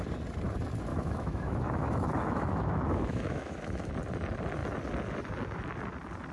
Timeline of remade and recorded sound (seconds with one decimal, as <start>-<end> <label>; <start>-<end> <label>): 0.0-0.9 recorded; 0.9-3.9 remade; 3.9-6.3 recorded